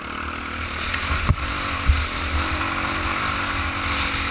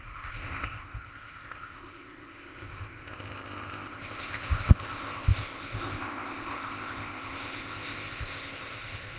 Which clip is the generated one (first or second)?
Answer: second